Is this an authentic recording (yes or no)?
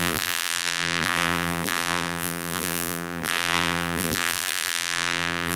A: no